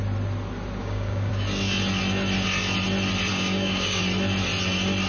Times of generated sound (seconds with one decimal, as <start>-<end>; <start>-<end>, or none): 0.8-1.3; 3.3-4.0